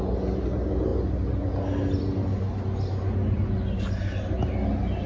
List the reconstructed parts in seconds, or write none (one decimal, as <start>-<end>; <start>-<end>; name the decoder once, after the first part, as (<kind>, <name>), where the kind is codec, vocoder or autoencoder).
none